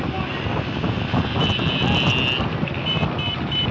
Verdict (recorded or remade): recorded